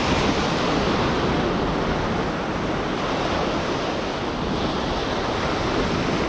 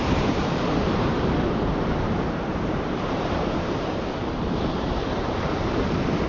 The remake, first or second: second